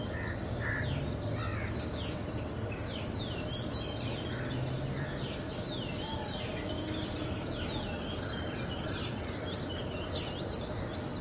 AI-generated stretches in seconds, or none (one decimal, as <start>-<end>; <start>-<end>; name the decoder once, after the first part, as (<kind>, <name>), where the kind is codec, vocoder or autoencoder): none